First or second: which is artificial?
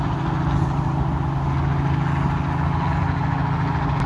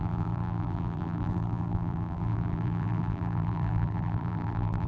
second